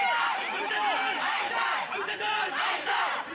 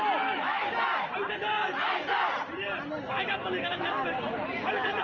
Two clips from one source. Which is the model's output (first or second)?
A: first